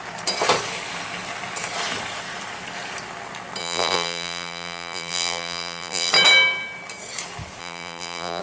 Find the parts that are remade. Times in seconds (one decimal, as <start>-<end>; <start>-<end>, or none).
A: 3.6-6.1; 7.6-8.4

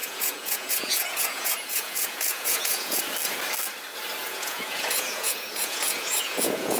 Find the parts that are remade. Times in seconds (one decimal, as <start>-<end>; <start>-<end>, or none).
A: 0.0-3.0; 4.2-6.8

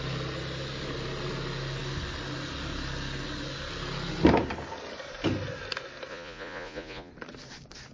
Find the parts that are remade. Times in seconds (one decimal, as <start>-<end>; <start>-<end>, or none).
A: 6.1-7.1

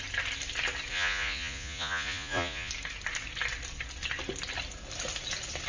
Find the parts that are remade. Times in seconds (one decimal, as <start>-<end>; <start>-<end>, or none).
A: 0.9-2.7

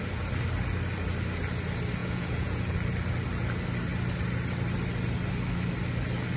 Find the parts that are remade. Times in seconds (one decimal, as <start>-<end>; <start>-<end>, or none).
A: 2.0-2.6